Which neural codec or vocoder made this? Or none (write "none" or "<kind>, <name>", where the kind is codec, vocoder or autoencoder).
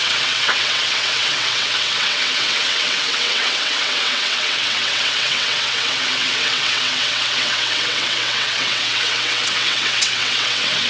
vocoder, WaveNeXt